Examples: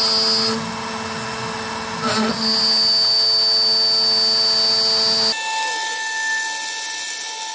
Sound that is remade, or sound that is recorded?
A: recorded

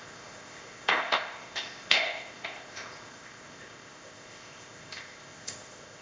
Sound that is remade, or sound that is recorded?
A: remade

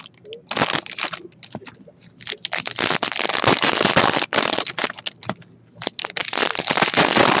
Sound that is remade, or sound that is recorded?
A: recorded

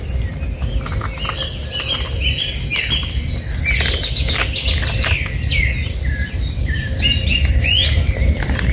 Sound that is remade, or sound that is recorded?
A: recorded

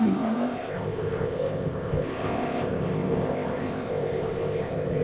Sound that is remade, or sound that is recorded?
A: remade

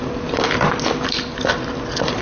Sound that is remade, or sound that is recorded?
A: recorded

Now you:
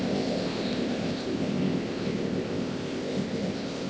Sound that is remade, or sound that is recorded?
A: remade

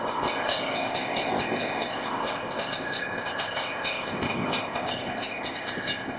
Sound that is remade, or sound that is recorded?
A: remade